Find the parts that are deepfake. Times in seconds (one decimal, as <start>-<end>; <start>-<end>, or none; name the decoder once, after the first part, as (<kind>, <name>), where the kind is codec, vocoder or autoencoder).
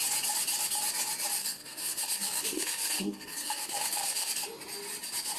1.4-4.3 (codec, SNAC)